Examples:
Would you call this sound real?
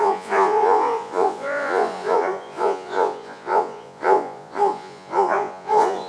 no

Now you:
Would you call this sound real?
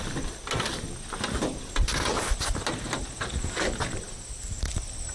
yes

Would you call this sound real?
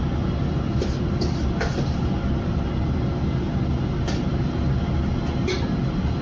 yes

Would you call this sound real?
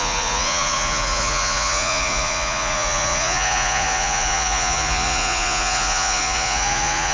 no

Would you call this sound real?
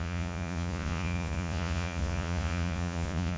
no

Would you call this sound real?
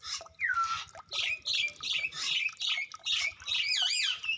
yes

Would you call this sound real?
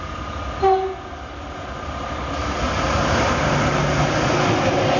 yes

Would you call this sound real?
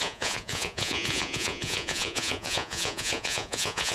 no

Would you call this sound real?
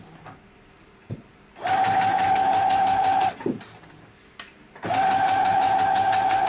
yes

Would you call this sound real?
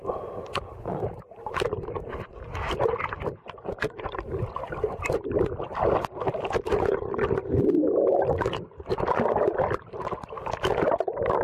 yes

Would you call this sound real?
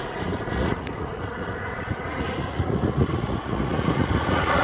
no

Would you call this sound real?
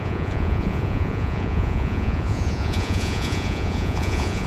no